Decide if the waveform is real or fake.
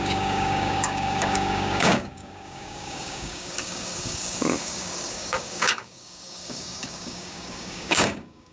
fake